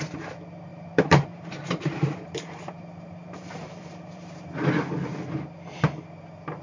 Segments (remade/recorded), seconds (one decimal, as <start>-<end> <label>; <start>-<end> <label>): 0.0-0.7 recorded; 0.7-4.7 remade; 4.7-6.6 recorded